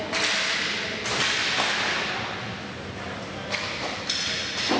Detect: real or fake real